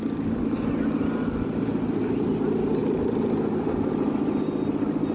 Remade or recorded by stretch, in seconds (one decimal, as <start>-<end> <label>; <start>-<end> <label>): 0.0-5.1 recorded